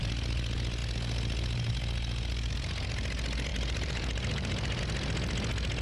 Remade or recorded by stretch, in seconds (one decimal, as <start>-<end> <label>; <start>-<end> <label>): 0.0-3.5 recorded; 3.5-4.8 remade; 4.8-5.8 recorded

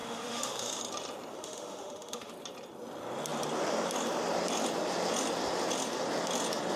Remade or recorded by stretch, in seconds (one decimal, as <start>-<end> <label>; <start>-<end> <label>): 0.0-0.8 remade; 0.8-1.3 recorded; 1.3-2.3 remade; 2.3-6.8 recorded